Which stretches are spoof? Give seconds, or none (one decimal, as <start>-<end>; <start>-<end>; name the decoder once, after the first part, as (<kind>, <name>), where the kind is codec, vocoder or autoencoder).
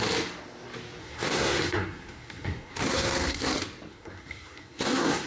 1.0-3.5 (codec, SNAC); 3.9-5.3